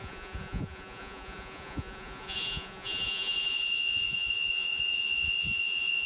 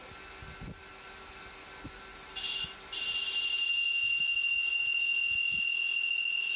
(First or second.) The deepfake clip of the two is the first